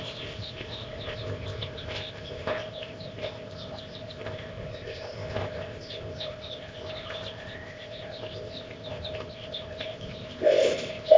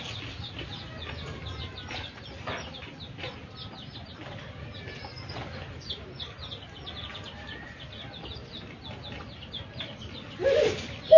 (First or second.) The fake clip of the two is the first